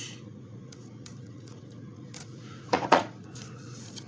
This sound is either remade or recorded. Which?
remade